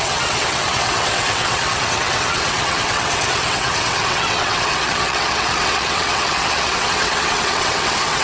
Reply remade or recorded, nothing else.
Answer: remade